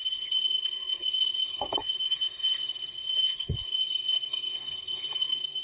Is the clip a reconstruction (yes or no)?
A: yes